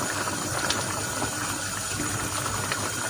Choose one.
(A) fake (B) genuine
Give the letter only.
A